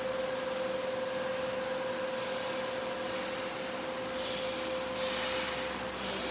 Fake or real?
real